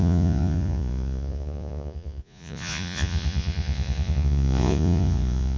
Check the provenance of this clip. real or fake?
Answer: fake